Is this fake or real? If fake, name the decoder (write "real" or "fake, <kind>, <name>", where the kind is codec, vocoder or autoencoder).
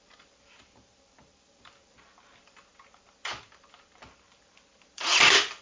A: fake, vocoder, BigVGAN v2